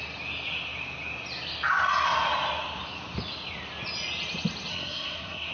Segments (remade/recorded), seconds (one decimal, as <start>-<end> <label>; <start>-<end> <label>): 0.0-4.7 recorded; 4.7-5.5 remade